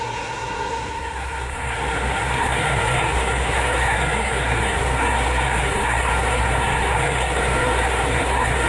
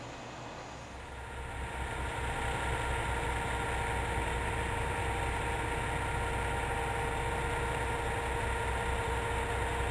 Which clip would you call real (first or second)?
second